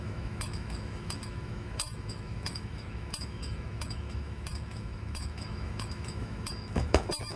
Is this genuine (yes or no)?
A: no